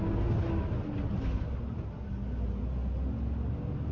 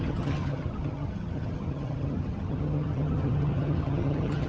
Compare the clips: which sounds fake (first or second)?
second